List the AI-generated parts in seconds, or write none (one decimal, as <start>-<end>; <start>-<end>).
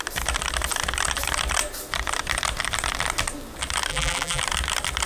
3.9-4.4